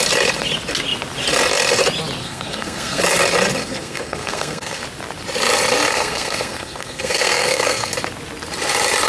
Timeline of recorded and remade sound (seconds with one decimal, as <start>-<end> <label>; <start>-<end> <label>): 0.0-2.2 recorded; 2.2-3.0 remade; 3.0-3.6 recorded; 3.6-4.8 remade; 4.8-5.9 recorded; 5.9-7.9 remade; 7.9-9.1 recorded